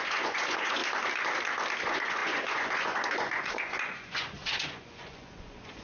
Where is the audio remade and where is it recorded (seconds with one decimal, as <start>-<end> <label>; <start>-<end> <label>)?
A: 0.0-0.8 remade; 0.8-1.8 recorded; 1.8-5.8 remade